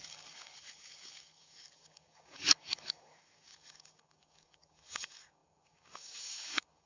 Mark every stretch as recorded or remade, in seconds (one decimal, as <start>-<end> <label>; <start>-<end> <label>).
0.0-6.9 remade